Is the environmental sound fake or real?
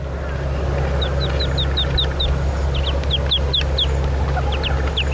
real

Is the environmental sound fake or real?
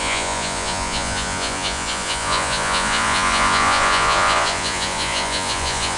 fake